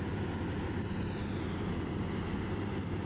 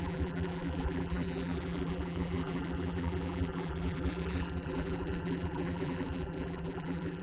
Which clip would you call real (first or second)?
first